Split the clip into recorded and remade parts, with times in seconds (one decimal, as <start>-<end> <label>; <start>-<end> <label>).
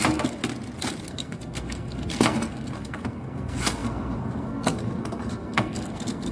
0.0-0.4 remade; 0.4-1.0 recorded; 1.0-6.3 remade